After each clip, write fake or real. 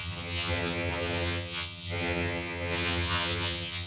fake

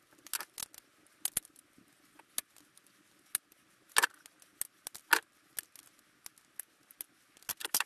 real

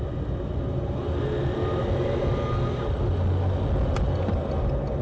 real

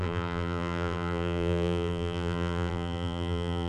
fake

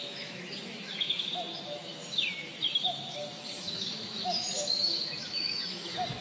fake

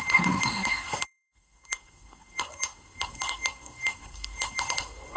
fake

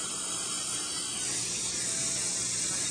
real